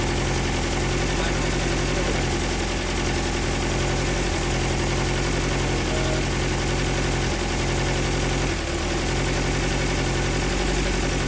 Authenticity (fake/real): real